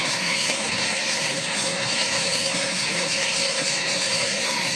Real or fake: fake